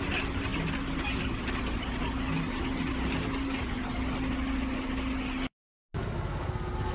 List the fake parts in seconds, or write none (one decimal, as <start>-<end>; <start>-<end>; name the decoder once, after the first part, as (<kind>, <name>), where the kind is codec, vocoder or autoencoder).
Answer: none